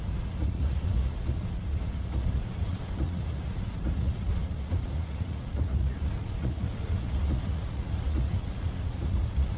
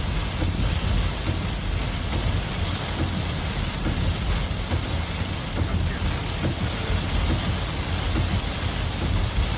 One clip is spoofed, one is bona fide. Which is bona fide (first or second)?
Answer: second